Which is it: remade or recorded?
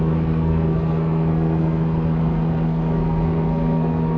remade